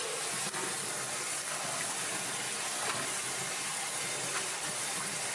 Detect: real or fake real